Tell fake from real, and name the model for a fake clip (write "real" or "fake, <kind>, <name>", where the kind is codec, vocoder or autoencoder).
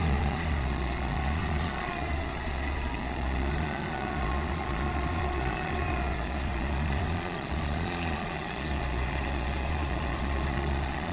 fake, vocoder, Vocos